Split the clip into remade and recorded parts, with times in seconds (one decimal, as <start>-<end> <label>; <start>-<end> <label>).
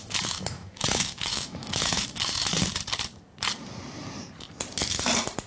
0.0-2.7 remade; 2.7-5.5 recorded